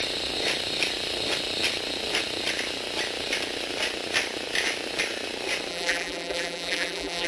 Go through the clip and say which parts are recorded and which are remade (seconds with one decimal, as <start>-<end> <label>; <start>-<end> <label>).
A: 0.0-5.7 recorded; 5.7-7.3 remade